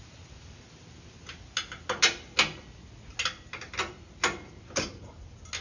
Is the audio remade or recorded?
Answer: recorded